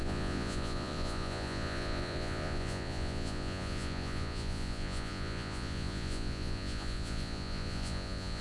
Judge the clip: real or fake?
fake